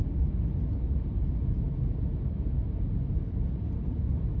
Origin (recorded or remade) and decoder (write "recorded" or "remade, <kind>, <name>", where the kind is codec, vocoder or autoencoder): recorded